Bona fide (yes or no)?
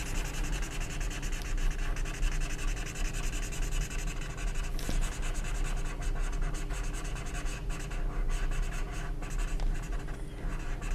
yes